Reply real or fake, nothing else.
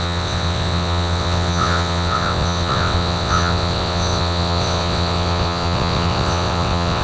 fake